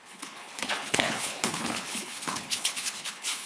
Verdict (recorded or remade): remade